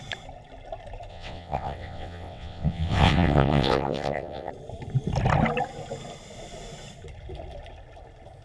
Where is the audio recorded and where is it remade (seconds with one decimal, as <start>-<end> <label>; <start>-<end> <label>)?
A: 0.0-1.1 recorded; 1.1-4.5 remade; 4.5-8.4 recorded